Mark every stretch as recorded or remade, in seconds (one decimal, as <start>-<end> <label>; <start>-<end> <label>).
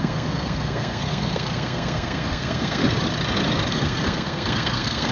0.0-2.8 remade; 2.8-3.7 recorded; 3.7-5.1 remade